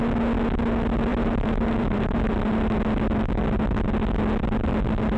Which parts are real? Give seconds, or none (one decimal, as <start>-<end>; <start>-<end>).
0.0-1.1; 2.6-5.2

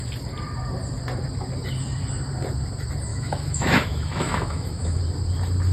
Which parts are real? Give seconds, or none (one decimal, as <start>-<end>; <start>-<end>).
0.0-3.1; 5.0-5.7

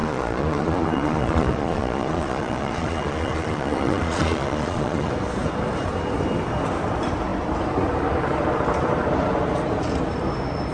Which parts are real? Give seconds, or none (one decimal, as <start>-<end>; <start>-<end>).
5.1-10.7

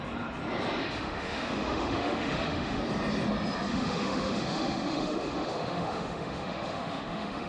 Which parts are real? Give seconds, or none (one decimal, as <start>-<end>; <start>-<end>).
0.0-0.8; 2.8-3.7